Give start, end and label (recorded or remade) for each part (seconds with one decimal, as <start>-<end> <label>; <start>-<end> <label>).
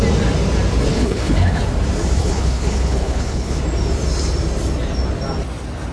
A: 0.0-0.9 recorded; 0.9-1.6 remade; 1.6-2.2 recorded; 2.2-3.6 remade; 3.6-5.9 recorded